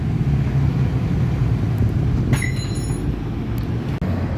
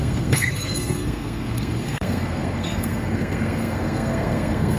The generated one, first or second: second